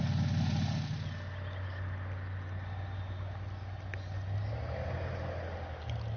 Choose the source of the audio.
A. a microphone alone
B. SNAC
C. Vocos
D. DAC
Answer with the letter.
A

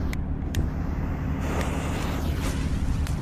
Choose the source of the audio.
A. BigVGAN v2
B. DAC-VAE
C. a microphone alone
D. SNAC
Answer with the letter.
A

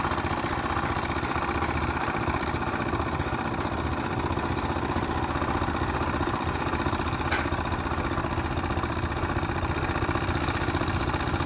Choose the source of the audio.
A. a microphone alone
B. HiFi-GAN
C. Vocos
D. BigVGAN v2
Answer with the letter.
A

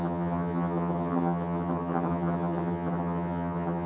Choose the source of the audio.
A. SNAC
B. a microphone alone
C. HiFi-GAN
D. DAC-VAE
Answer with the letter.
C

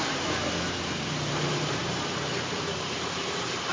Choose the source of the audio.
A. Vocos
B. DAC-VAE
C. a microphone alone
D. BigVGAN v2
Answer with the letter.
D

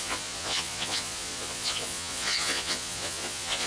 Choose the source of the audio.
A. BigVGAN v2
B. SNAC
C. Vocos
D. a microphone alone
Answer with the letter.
C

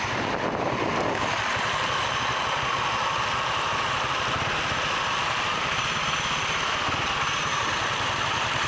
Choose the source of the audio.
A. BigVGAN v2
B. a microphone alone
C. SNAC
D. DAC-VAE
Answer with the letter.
B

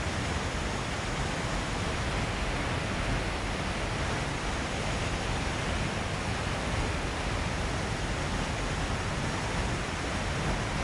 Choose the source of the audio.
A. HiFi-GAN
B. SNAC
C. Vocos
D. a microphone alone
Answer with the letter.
D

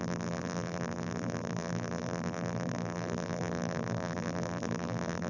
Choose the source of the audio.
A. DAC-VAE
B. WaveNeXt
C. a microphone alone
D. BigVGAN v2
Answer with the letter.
D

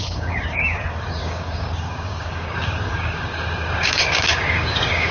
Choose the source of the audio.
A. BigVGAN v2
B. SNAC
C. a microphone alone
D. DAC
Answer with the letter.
D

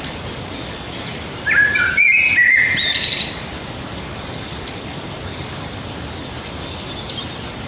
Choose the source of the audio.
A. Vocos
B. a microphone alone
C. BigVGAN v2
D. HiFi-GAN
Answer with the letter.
B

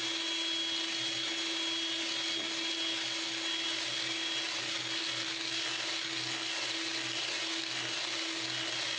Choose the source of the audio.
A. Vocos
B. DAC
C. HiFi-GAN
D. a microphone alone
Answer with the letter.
D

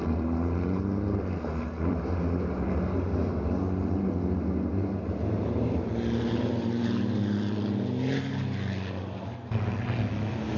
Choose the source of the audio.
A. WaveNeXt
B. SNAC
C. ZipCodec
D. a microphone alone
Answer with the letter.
D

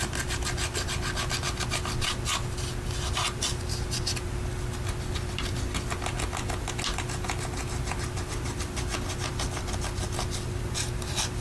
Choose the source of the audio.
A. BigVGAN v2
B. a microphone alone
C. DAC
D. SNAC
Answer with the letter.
B